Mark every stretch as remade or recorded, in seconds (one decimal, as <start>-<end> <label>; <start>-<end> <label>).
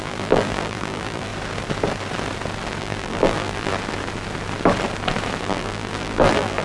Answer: 0.0-1.3 remade; 1.3-2.8 recorded; 2.8-3.7 remade; 3.7-5.4 recorded; 5.4-6.6 remade